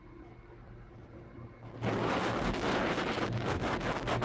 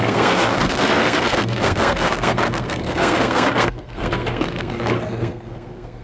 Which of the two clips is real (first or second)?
first